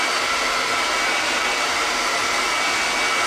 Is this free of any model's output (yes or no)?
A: yes